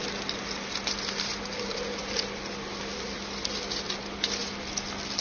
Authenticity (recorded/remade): recorded